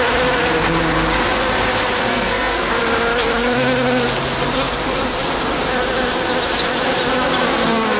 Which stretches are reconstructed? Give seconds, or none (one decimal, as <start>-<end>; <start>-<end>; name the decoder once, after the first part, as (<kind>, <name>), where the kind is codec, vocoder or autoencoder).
2.1-2.7 (codec, SNAC)